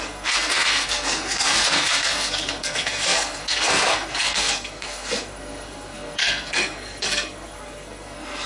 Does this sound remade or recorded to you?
remade